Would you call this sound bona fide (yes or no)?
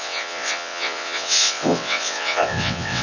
no